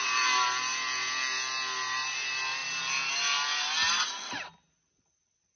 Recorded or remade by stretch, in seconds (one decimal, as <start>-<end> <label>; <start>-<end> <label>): 0.0-5.6 recorded